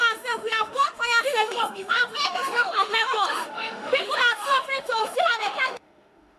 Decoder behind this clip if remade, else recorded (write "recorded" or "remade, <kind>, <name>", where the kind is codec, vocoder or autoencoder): remade, autoencoder, DAC-VAE